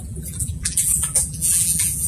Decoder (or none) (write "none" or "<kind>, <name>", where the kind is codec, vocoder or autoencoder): vocoder, BigVGAN v2